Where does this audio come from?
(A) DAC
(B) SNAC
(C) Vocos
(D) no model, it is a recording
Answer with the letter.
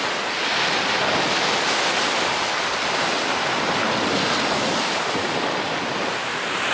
D